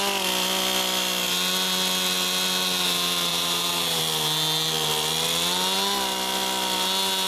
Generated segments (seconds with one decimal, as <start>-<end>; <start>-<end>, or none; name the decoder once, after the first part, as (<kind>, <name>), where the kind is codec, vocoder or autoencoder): 3.3-4.0 (vocoder, BigVGAN v2)